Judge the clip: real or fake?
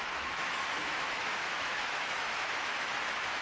fake